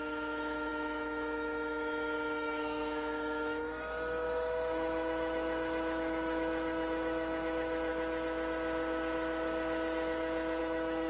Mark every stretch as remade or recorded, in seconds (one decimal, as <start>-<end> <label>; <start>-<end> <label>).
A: 0.0-7.9 remade; 7.9-10.6 recorded; 10.6-11.1 remade